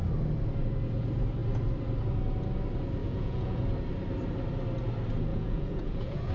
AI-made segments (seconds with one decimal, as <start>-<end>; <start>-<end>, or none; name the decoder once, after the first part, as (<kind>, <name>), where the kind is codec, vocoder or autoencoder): 3.0-3.6 (vocoder, Vocos); 5.3-6.3